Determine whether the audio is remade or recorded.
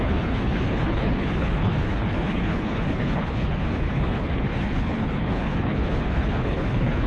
remade